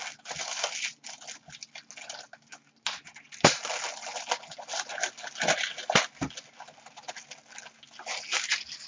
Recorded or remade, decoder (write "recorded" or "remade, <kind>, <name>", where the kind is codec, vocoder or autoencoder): recorded